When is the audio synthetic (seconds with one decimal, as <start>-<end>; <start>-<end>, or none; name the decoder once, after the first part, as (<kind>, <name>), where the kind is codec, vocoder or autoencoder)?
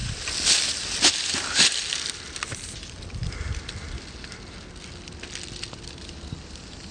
none